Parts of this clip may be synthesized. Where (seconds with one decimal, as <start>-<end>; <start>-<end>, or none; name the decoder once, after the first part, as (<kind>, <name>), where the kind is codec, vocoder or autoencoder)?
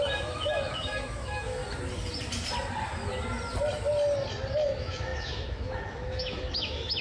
0.0-1.6 (autoencoder, DAC-VAE); 4.5-7.0